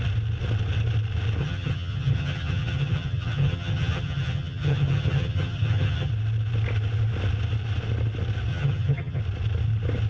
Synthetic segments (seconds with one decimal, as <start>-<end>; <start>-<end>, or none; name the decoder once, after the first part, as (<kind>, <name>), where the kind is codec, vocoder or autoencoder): 1.4-6.1 (vocoder, HiFi-GAN); 8.5-9.2